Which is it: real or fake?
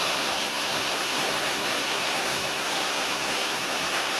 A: fake